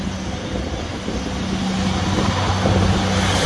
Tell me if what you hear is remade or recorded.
recorded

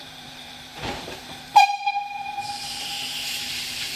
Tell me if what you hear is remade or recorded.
remade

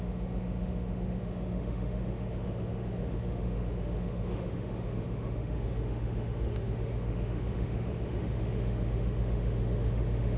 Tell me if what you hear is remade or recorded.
remade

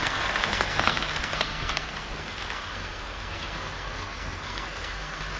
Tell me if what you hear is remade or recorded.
remade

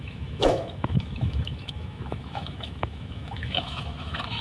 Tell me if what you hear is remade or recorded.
remade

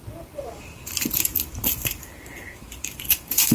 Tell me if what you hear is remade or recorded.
remade